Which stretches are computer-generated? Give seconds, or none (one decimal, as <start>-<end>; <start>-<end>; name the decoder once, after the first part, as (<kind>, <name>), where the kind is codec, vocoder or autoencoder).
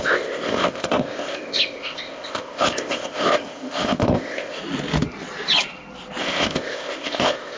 0.0-4.6 (codec, ZipCodec); 6.2-7.6